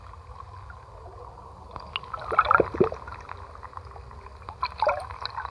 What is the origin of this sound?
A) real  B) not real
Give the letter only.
A